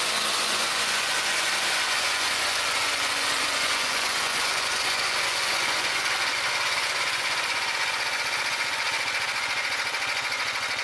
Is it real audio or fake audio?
fake